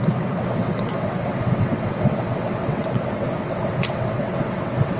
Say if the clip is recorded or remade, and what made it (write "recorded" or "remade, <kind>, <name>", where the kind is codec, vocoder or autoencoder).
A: remade, vocoder, WaveNeXt